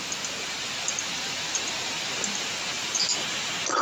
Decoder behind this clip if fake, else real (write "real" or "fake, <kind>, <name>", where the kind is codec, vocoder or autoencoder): real